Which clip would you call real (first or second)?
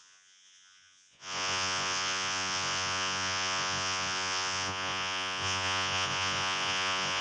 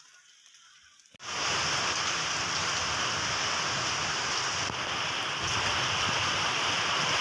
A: second